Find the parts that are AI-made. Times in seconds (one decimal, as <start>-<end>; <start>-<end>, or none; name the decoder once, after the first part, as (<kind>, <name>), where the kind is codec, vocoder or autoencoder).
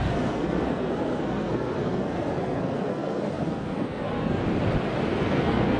0.0-4.4 (codec, SNAC); 5.2-5.8